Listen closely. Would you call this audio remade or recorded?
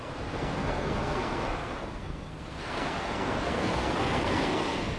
remade